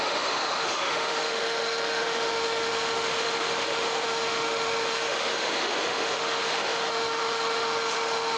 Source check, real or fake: fake